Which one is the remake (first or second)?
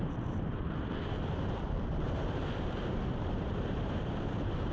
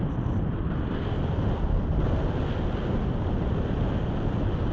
first